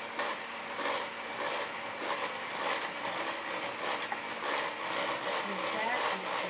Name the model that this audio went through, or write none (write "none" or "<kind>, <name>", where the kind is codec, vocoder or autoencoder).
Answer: none